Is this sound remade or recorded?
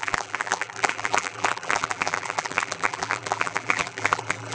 remade